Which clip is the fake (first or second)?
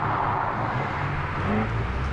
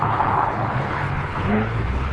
second